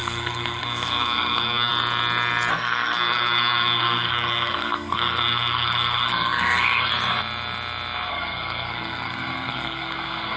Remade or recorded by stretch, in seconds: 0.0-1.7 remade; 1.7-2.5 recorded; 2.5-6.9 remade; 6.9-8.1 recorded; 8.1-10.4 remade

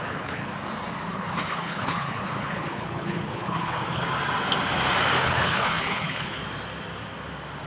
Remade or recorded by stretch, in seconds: 0.0-0.5 remade; 0.5-1.1 recorded; 1.1-4.0 remade; 4.0-5.2 recorded; 5.2-6.4 remade; 6.4-7.7 recorded

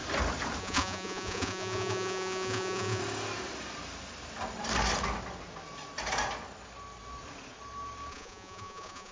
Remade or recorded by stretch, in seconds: 0.0-0.6 recorded; 0.6-3.0 remade; 3.0-8.1 recorded; 8.1-9.1 remade

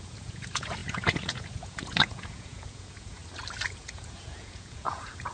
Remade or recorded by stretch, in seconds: 0.0-3.2 remade; 3.2-3.7 recorded; 3.7-5.3 remade

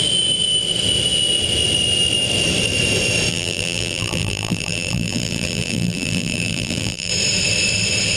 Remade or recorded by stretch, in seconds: 0.0-3.3 recorded; 3.3-7.1 remade; 7.1-8.2 recorded

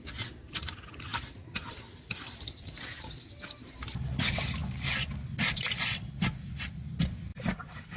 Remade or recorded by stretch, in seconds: 0.0-8.0 recorded

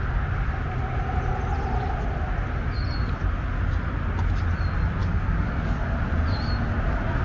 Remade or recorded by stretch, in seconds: 0.0-5.0 recorded; 5.0-5.9 remade; 5.9-7.2 recorded

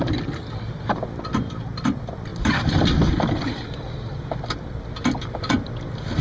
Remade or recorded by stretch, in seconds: 0.0-6.2 recorded